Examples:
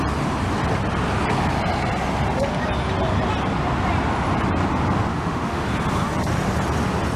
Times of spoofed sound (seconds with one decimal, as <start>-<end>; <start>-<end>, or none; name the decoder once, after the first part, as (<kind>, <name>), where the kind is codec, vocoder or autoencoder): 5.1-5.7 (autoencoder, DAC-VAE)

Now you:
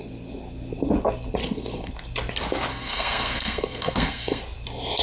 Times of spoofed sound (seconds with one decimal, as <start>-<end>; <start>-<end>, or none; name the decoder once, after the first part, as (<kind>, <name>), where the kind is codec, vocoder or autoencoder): 1.4-1.9 (codec, SNAC); 2.7-4.4

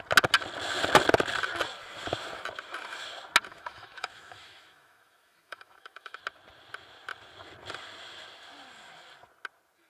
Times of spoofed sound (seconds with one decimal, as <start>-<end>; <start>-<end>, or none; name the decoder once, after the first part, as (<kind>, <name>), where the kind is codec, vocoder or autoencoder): 3.5-6.2 (autoencoder, DAC-VAE)